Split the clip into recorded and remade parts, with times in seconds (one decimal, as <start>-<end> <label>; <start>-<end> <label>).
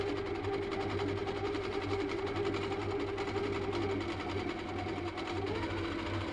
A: 0.0-1.2 recorded; 1.2-2.2 remade; 2.2-6.3 recorded